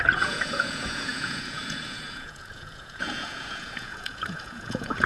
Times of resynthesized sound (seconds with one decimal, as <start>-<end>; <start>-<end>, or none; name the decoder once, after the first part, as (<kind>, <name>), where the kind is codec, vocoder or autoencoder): 0.0-5.1 (vocoder, Vocos)